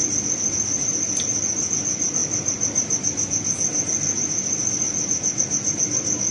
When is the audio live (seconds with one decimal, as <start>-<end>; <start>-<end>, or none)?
0.0-6.3

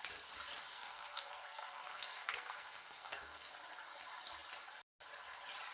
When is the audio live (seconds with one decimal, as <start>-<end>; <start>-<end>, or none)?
0.0-0.7; 3.5-5.7